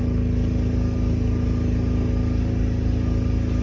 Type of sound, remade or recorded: recorded